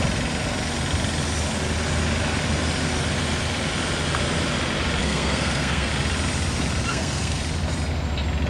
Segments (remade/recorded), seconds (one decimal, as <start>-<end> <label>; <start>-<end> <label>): 0.0-5.0 recorded; 5.0-5.9 remade; 5.9-6.9 recorded; 6.9-7.4 remade; 7.4-8.5 recorded